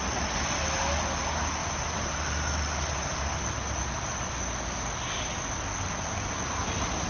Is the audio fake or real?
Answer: real